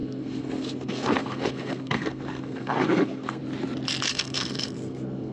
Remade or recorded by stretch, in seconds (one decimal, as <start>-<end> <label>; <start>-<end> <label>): 0.0-3.4 remade; 3.4-4.1 recorded; 4.1-5.3 remade

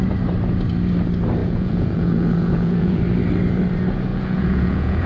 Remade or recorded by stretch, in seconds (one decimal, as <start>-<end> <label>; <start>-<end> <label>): 0.0-1.4 recorded; 1.4-3.0 remade; 3.0-4.1 recorded; 4.1-5.1 remade

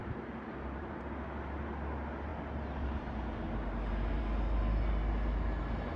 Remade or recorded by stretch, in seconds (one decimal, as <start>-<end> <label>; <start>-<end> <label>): 0.0-6.0 recorded

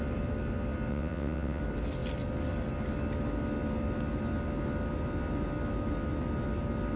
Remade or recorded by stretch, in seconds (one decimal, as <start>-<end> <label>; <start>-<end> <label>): 0.0-0.9 recorded; 0.9-1.6 remade; 1.6-7.0 recorded

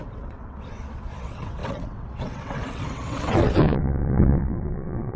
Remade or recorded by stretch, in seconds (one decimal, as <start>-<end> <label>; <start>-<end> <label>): 0.0-5.2 remade

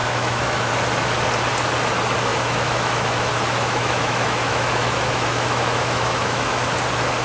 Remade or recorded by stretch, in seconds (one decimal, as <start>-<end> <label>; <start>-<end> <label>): 0.0-0.7 remade; 0.7-2.3 recorded; 2.3-6.6 remade; 6.6-7.2 recorded

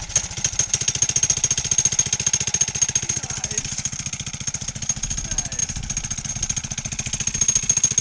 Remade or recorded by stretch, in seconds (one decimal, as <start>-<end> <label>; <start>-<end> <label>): 0.0-8.0 recorded